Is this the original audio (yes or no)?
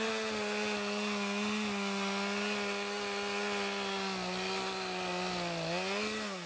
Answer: yes